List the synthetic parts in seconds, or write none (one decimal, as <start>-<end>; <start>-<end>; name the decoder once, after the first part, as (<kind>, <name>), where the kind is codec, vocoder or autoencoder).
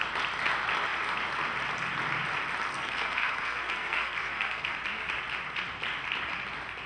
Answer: 2.7-4.7 (codec, SNAC)